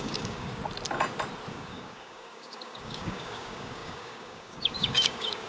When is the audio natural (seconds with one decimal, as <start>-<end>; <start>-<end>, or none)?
0.6-1.5

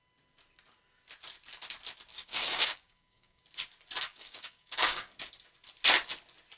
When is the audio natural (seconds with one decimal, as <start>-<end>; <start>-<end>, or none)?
0.0-2.1; 3.4-4.1; 5.1-6.6

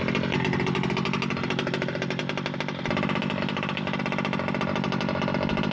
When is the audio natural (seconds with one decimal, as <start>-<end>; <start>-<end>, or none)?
0.0-5.7

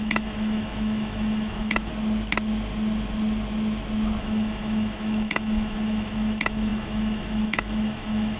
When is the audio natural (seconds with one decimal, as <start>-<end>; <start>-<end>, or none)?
1.9-4.2

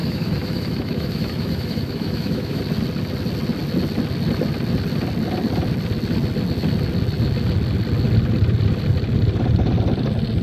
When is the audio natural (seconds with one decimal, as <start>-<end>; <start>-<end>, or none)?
2.6-10.4

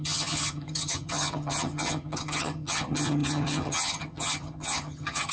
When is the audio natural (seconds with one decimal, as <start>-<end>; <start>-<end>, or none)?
none

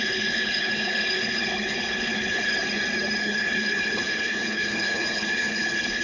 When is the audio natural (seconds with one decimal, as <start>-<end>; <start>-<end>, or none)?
2.5-3.2